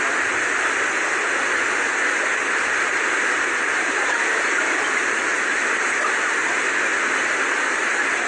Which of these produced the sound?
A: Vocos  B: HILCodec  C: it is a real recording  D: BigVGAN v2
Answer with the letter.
C